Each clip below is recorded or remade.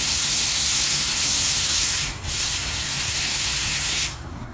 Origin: remade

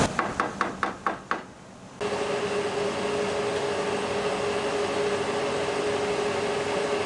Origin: recorded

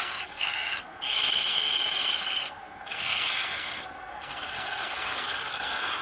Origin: remade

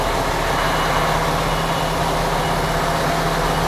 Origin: recorded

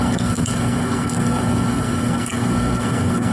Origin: remade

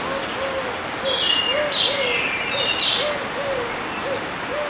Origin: recorded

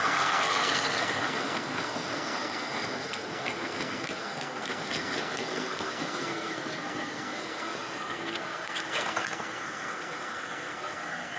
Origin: remade